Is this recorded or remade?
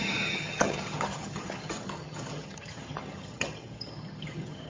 remade